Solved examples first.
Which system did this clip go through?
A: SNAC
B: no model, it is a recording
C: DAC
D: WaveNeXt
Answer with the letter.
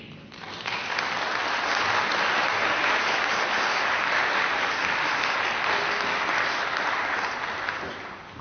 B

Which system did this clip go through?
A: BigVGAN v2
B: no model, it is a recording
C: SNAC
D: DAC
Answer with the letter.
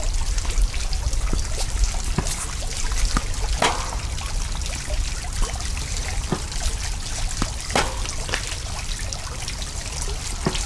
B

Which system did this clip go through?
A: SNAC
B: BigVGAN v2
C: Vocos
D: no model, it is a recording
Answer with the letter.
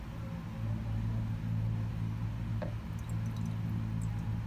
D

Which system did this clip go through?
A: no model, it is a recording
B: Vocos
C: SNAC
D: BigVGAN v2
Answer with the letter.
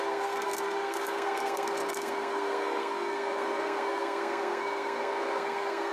C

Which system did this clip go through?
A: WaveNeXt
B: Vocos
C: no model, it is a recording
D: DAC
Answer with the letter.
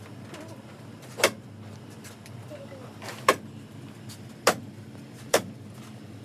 C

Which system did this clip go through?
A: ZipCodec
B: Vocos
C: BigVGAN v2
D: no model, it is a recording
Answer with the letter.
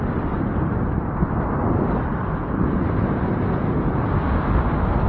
D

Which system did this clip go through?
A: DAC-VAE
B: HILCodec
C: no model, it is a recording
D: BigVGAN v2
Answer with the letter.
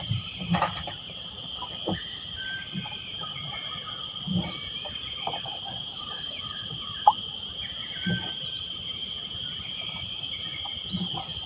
D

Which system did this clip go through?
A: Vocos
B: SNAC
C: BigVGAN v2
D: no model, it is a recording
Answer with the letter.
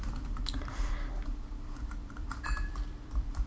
C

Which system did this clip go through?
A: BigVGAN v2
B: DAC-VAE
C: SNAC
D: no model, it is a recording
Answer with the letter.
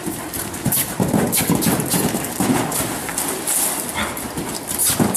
D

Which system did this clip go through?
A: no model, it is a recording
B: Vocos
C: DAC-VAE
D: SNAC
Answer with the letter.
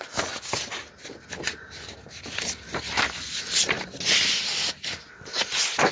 A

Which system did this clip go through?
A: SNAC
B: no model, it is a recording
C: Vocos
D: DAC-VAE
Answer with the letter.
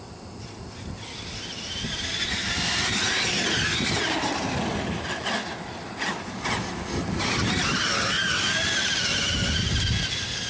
B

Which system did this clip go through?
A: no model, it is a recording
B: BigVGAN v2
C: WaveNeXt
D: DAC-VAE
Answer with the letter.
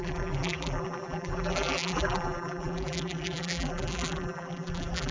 B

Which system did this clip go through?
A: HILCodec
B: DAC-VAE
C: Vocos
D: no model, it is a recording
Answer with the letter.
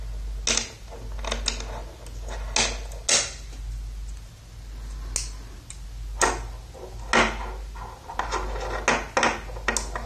D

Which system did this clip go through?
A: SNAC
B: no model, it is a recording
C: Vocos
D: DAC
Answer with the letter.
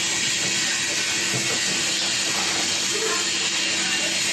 B